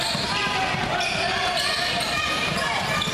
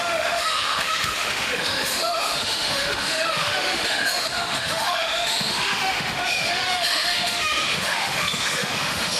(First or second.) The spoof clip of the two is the second